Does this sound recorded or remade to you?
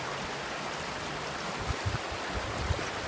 recorded